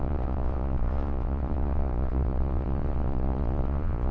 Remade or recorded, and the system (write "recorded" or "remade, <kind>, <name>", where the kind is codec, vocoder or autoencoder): remade, vocoder, Vocos